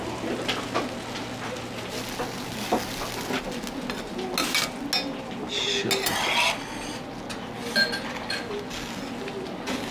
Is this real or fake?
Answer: real